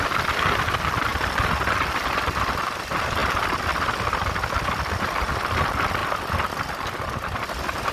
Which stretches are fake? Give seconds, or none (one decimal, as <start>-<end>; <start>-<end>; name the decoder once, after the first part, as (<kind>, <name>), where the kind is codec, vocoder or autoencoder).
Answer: none